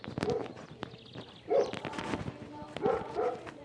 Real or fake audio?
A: real